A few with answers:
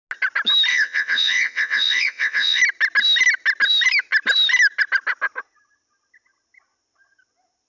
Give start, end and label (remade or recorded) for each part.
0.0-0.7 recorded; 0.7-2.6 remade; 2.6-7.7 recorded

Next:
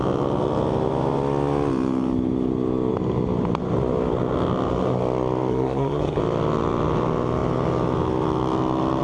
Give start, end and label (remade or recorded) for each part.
0.0-5.5 recorded; 5.5-6.2 remade; 6.2-9.0 recorded

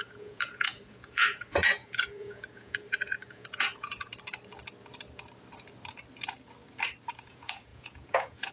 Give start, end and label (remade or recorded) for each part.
0.0-4.1 remade; 4.1-7.2 recorded; 7.2-8.5 remade